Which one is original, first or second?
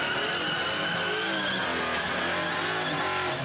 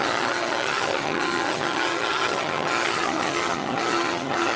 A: first